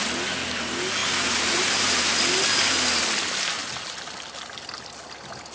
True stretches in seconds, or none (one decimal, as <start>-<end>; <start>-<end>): 0.0-1.0; 2.1-5.5